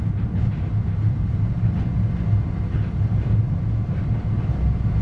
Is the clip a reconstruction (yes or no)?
no